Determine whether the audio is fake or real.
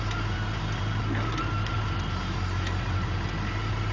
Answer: real